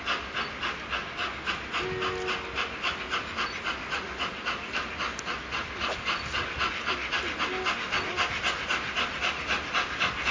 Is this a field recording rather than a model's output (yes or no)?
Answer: yes